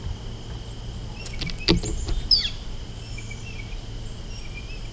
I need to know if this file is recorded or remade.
recorded